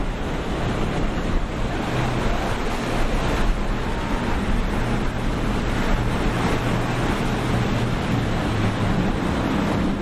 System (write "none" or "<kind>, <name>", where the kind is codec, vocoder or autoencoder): none